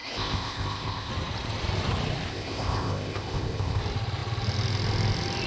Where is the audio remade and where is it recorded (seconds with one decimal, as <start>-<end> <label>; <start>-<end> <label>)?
0.0-1.1 remade; 1.1-2.3 recorded; 2.3-3.8 remade; 3.8-5.5 recorded